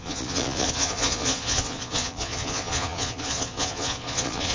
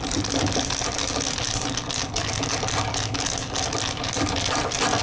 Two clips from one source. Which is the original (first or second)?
second